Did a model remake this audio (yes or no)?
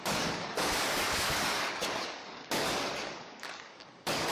yes